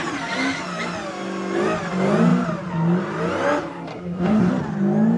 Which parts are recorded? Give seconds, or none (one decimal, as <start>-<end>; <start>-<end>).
0.0-3.9; 4.5-5.2